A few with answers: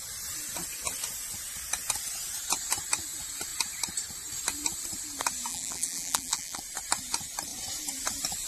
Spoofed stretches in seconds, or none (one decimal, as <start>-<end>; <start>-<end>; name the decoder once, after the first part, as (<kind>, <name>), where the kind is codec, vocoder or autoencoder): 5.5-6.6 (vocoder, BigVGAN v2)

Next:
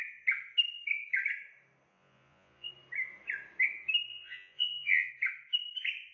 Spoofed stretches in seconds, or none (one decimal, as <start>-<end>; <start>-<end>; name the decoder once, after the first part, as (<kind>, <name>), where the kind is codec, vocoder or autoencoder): 1.9-2.7 (vocoder, Vocos); 4.1-5.1

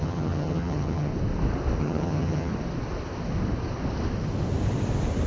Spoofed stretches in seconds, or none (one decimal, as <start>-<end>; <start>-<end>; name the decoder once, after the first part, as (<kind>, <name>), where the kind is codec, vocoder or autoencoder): 0.0-1.1 (vocoder, HiFi-GAN); 1.8-2.5

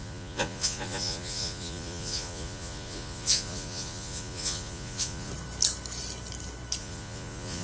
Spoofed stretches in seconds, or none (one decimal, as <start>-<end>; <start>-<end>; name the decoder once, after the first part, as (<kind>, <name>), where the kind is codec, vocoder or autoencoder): 0.0-5.3 (vocoder, Vocos); 6.8-7.6